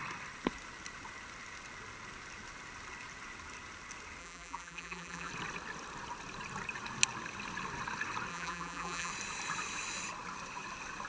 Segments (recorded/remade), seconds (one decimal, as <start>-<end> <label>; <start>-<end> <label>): 0.0-4.2 recorded; 4.2-5.3 remade; 5.3-8.3 recorded; 8.3-9.1 remade; 9.1-11.1 recorded